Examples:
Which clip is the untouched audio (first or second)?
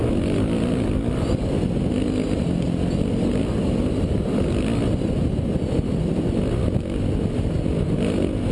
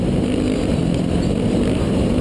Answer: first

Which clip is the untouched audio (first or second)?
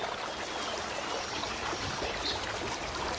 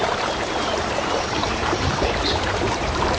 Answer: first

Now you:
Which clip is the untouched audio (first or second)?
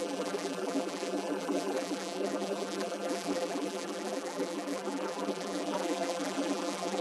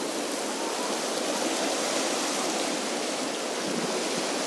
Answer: second